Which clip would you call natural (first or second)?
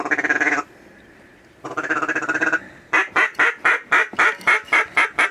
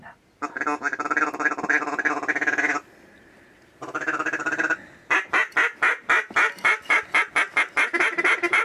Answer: second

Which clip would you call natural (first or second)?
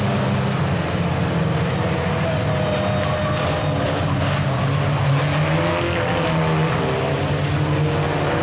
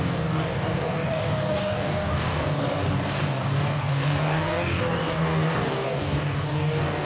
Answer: first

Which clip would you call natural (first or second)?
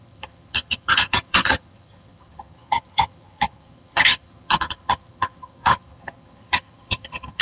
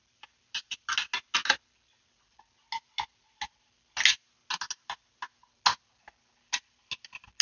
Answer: second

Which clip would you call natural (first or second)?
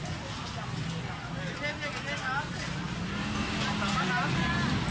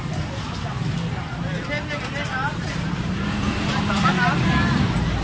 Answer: first